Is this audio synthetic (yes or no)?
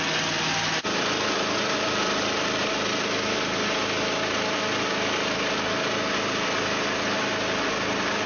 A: no